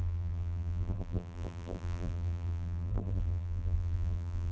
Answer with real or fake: fake